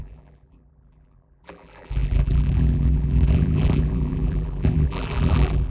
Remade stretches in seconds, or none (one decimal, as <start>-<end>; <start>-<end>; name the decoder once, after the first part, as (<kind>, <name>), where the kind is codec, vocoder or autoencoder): 0.0-5.7 (vocoder, BigVGAN v2)